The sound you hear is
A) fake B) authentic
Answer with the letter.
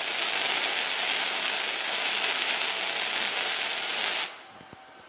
B